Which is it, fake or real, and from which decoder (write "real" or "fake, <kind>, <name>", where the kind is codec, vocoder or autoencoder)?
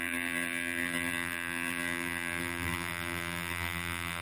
fake, vocoder, BigVGAN v2